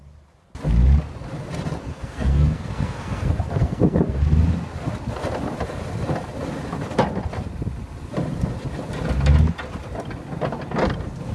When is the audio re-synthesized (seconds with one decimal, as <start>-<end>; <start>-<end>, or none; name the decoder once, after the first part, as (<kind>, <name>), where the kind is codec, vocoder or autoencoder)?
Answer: 1.9-4.2 (codec, SNAC)